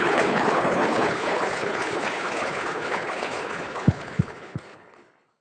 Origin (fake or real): fake